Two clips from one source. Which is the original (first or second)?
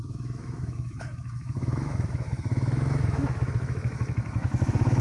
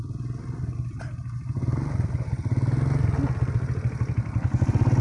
second